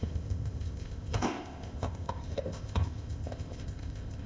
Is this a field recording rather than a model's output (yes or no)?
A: no